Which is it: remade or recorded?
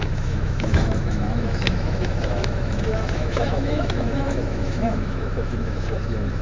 remade